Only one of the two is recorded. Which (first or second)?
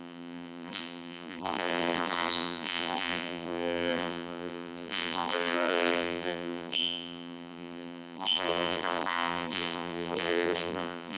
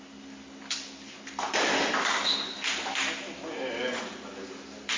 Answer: second